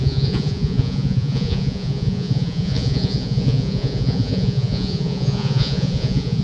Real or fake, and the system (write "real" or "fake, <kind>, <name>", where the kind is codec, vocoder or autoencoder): fake, vocoder, Vocos